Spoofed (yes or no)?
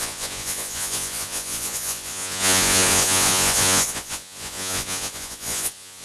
yes